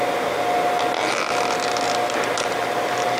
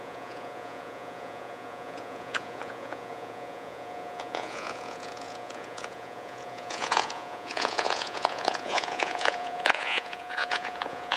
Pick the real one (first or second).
first